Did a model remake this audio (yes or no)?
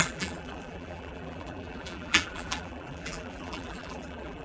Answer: yes